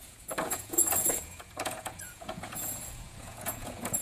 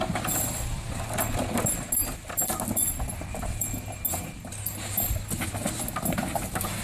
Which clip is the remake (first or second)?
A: first